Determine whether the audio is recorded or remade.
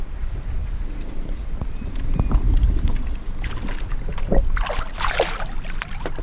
recorded